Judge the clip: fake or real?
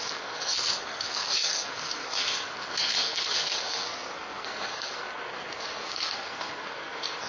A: fake